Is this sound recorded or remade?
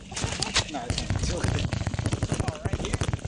recorded